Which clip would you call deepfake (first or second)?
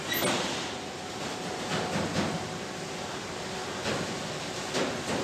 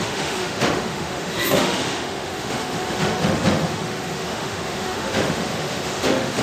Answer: second